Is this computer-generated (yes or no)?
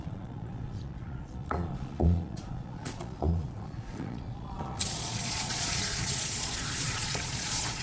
yes